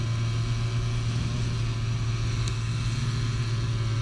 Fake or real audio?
real